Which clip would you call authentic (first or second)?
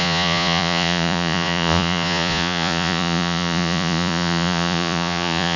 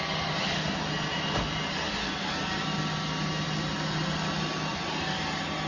second